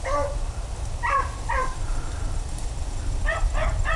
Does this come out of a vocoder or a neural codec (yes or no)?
no